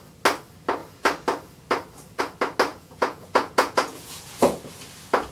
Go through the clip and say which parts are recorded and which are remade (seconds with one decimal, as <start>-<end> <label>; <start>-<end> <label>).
0.0-2.7 recorded; 2.7-4.6 remade; 4.6-5.3 recorded